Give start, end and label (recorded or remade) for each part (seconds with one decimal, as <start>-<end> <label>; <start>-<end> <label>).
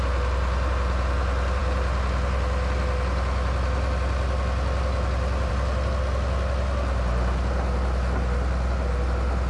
0.0-9.5 recorded